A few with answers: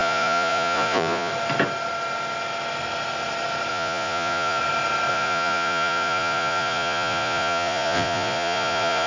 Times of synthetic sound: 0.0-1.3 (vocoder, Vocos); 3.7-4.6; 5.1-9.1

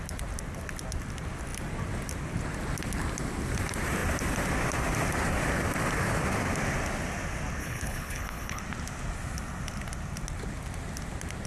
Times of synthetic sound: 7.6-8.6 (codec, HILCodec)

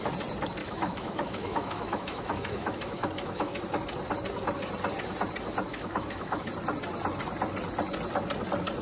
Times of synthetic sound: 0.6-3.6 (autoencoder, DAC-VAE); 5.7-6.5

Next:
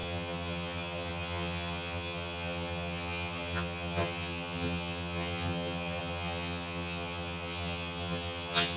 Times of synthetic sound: 0.0-8.8 (vocoder, HiFi-GAN)